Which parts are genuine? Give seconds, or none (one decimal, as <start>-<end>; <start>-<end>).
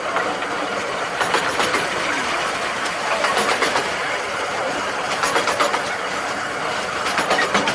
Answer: 0.0-7.7